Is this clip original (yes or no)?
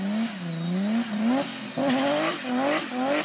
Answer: yes